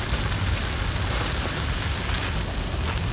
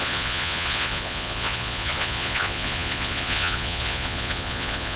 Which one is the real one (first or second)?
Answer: first